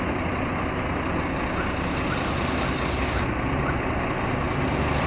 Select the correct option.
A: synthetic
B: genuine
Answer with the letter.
B